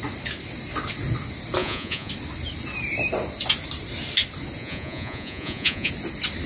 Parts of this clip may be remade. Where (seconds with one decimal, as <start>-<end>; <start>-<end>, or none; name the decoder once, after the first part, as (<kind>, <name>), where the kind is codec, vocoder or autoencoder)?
1.6-2.1 (vocoder, Vocos); 4.6-5.9